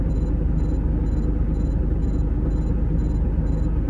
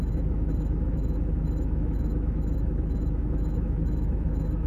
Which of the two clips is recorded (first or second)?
first